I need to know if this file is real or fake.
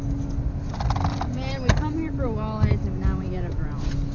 real